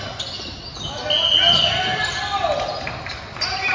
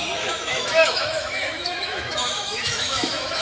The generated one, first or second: second